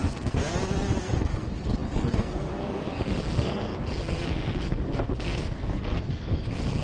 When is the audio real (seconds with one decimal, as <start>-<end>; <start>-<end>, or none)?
0.4-1.0